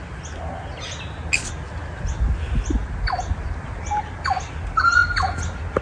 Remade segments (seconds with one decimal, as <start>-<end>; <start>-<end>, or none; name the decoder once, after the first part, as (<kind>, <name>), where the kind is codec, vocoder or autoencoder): none